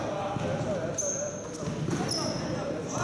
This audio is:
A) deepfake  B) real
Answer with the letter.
B